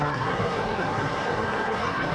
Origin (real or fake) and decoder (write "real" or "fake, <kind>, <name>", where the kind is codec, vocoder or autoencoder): fake, codec, SNAC